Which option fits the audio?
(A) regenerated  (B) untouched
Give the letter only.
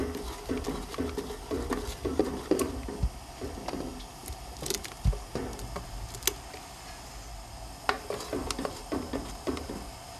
B